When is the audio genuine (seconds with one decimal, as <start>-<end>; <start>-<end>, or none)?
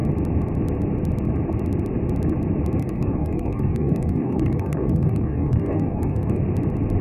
0.0-2.8; 6.4-7.0